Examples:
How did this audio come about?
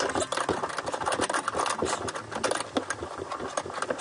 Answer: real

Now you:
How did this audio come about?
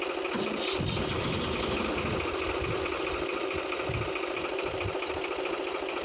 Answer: real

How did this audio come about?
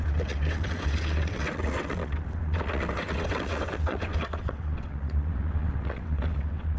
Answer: fake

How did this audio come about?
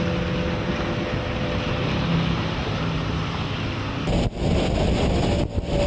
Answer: real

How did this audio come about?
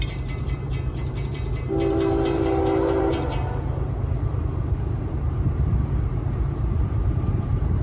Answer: fake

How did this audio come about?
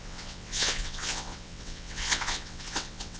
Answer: fake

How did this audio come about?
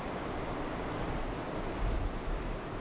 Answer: real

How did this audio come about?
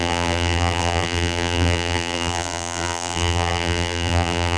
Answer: fake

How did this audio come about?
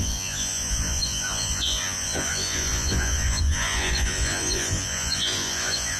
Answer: fake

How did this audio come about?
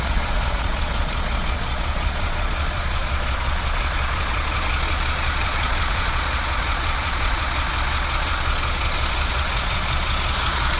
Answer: fake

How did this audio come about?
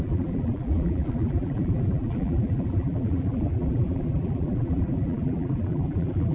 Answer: fake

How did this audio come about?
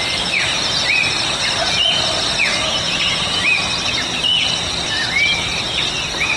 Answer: real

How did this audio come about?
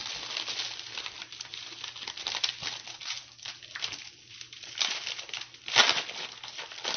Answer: real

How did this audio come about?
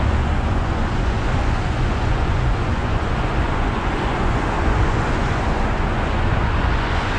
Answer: fake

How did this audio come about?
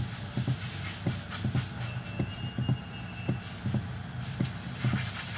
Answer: real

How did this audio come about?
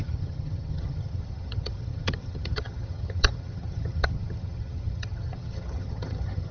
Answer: fake